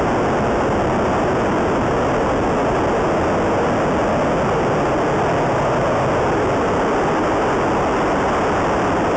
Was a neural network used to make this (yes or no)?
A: no